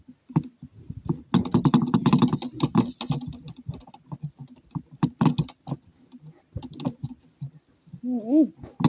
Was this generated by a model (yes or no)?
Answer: no